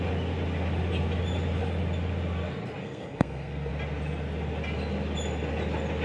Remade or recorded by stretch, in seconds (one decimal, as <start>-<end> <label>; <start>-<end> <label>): 0.0-2.8 recorded; 2.8-3.7 remade; 3.7-6.0 recorded